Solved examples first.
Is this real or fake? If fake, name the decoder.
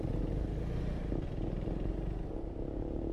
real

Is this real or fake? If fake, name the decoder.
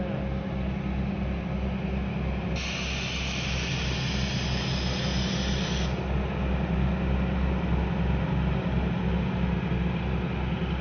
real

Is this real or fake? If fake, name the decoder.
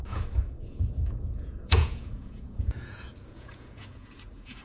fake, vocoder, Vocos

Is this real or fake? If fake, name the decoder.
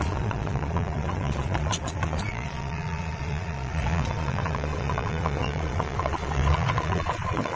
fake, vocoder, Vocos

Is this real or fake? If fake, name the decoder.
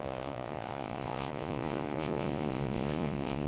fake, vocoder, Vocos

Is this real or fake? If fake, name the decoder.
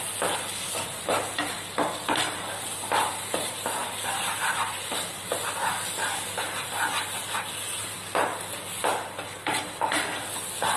real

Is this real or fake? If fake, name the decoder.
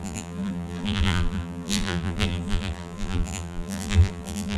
fake, vocoder, BigVGAN v2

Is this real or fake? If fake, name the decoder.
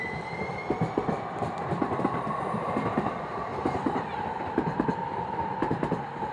fake, vocoder, BigVGAN v2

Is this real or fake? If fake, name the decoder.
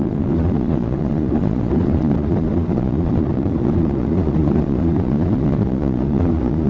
fake, vocoder, Vocos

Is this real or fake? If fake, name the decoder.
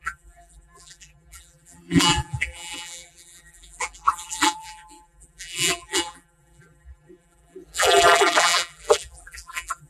fake, vocoder, BigVGAN v2